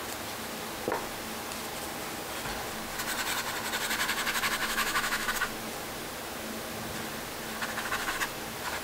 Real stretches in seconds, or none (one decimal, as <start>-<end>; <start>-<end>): 0.0-4.6; 5.3-8.8